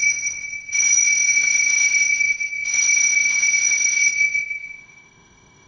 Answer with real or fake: fake